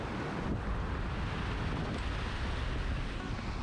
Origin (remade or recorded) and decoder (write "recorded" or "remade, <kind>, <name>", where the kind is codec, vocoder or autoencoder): recorded